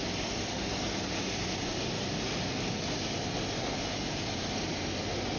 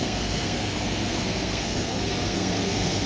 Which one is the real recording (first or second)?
first